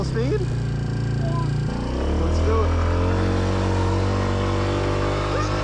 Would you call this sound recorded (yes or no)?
yes